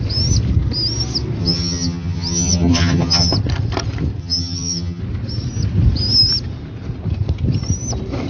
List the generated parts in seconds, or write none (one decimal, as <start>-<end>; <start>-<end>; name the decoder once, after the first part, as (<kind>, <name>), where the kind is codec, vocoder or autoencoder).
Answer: 1.4-3.3 (vocoder, HiFi-GAN); 4.2-5.0